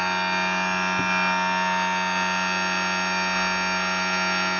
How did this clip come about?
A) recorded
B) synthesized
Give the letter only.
A